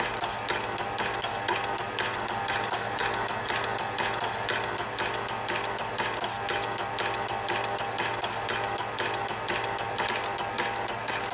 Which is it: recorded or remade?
recorded